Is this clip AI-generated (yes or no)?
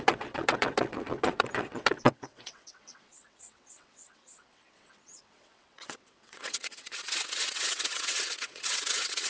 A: yes